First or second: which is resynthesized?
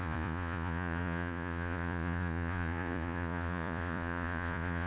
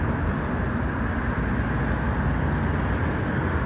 first